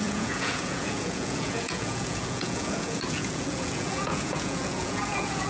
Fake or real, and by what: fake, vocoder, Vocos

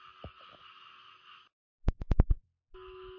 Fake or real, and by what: real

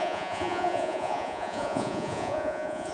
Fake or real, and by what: fake, vocoder, Vocos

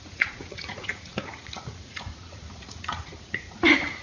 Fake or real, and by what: fake, vocoder, Vocos